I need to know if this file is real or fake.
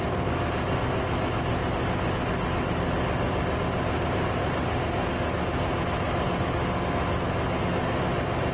real